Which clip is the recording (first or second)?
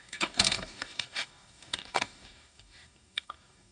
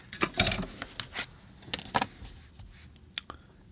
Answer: second